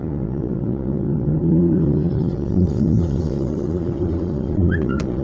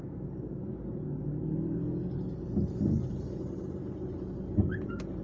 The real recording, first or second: second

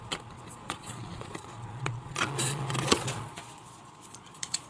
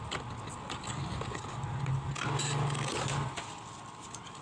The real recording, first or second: second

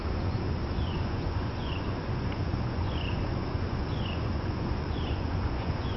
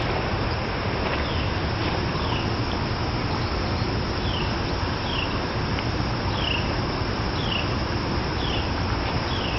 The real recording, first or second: second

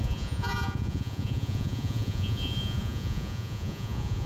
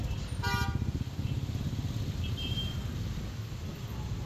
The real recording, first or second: second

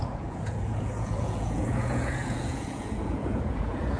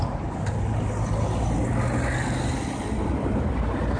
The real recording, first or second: second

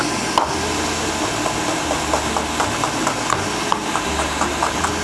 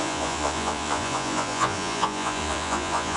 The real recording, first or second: first